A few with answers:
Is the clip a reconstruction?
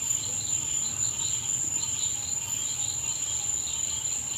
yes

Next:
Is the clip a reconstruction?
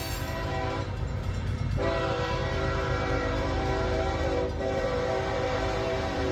yes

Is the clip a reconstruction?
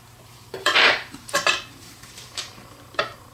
yes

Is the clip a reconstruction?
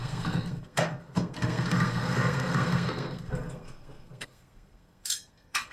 yes